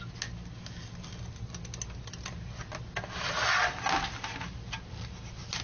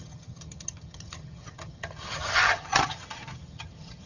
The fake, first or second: second